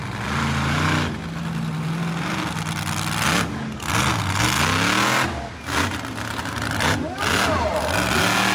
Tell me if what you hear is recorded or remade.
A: recorded